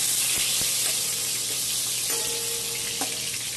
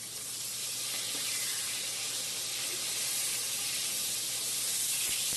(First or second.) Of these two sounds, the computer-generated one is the second